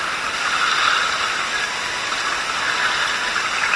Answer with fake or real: real